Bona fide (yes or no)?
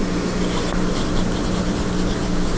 yes